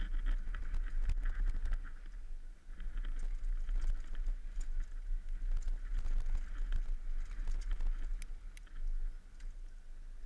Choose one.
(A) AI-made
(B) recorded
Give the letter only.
B